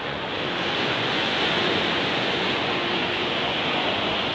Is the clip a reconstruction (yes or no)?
yes